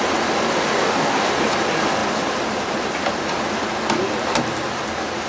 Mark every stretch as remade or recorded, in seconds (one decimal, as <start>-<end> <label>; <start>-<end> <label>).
0.0-0.7 recorded; 0.7-1.3 remade; 1.3-5.3 recorded